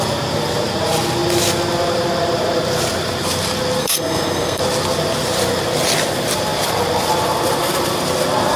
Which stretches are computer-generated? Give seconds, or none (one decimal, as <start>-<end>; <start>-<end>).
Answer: 3.8-4.6